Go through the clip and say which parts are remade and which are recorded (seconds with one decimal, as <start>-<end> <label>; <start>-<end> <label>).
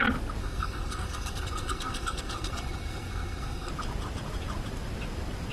0.0-0.4 recorded; 0.4-3.7 remade; 3.7-5.5 recorded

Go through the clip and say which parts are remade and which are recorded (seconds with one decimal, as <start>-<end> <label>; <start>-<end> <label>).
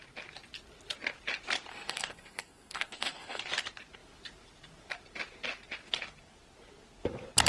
0.0-1.7 recorded; 1.7-3.4 remade; 3.4-7.5 recorded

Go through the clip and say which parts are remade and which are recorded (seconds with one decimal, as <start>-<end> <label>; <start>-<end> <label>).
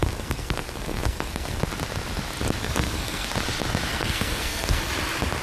0.0-1.6 remade; 1.6-2.6 recorded; 2.6-3.3 remade; 3.3-3.9 recorded; 3.9-4.9 remade; 4.9-5.4 recorded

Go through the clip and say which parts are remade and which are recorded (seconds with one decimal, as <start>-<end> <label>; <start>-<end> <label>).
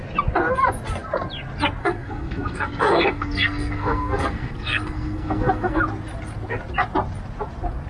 0.0-1.8 recorded; 1.8-5.8 remade; 5.8-7.9 recorded